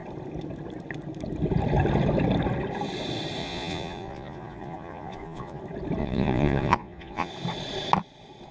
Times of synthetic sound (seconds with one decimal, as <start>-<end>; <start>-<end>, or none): 3.4-5.6; 6.0-7.3